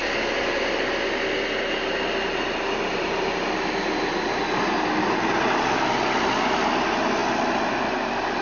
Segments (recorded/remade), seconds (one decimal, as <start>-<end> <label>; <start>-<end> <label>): 0.0-8.4 recorded